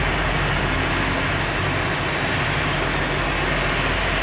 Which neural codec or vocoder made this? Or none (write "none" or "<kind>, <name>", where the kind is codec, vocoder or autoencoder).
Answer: none